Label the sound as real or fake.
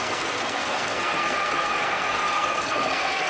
fake